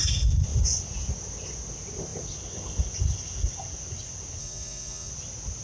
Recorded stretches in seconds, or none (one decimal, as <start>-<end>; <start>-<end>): 0.0-4.4; 5.1-5.6